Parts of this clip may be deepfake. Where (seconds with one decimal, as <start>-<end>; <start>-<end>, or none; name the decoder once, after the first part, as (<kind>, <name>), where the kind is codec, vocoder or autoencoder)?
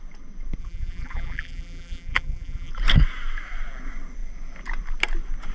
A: 0.6-2.7 (vocoder, BigVGAN v2)